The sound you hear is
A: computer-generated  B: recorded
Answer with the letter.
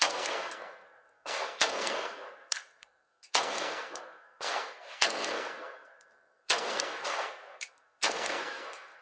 A